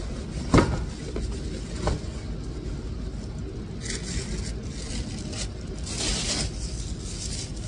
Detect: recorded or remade recorded